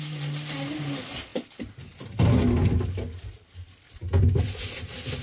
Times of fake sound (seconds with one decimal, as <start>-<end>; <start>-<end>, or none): none